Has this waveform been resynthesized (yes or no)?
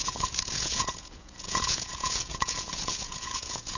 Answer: yes